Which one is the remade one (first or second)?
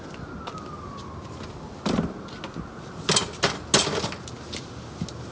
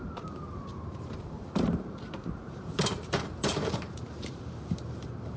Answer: second